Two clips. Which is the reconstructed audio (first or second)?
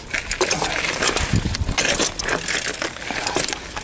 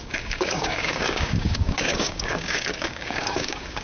second